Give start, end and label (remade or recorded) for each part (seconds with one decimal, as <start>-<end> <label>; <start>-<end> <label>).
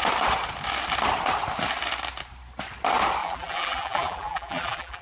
0.0-3.2 recorded; 3.2-5.0 remade